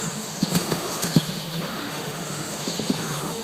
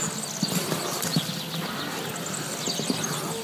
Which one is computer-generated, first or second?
first